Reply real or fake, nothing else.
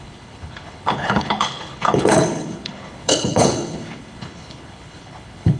fake